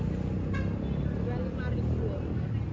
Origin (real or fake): real